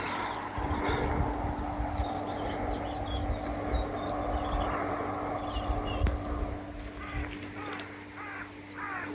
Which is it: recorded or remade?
recorded